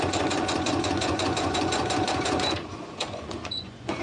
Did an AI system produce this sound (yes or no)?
yes